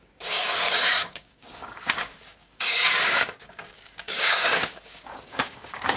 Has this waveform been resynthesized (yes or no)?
yes